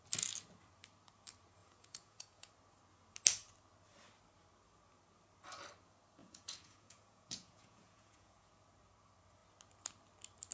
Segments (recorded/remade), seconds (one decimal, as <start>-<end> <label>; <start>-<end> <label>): 0.0-1.6 recorded; 1.6-2.5 remade; 2.5-6.2 recorded; 6.2-8.5 remade; 8.5-10.5 recorded